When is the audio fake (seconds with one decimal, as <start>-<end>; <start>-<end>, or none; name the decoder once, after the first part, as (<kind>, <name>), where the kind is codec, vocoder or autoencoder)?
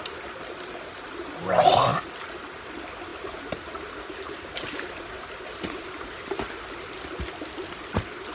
3.1-6.5 (vocoder, BigVGAN v2)